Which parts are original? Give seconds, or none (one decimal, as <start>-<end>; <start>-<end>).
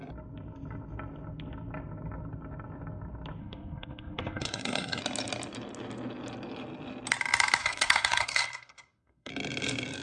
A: 0.0-3.4; 5.0-7.6; 9.3-10.0